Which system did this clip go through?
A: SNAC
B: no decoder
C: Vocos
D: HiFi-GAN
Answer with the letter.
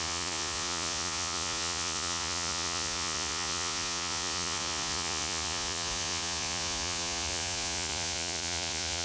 C